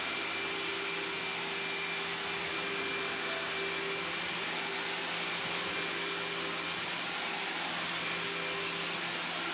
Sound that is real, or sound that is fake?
real